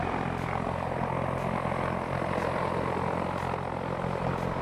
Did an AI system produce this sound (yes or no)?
no